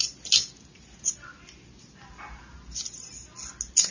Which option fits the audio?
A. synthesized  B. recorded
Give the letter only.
B